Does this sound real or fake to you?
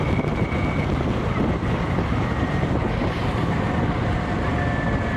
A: real